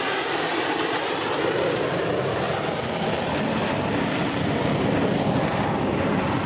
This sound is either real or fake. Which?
fake